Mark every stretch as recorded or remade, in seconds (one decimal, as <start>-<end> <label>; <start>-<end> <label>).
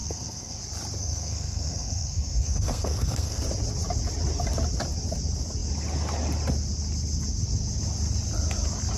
0.0-0.6 remade; 0.6-1.0 recorded; 1.0-3.4 remade; 3.4-9.0 recorded